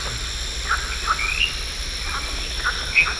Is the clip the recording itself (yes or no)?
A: yes